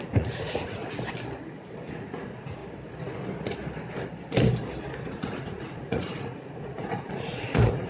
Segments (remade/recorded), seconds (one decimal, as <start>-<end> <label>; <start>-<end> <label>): 0.0-0.8 remade; 0.8-1.9 recorded; 1.9-2.6 remade; 2.6-5.1 recorded; 5.1-7.9 remade